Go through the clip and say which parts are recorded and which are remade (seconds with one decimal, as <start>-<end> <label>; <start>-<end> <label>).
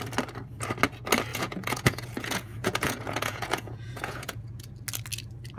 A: 0.0-1.3 recorded; 1.3-4.7 remade; 4.7-5.6 recorded